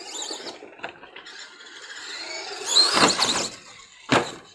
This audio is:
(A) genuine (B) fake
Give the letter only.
A